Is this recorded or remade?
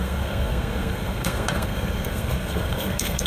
remade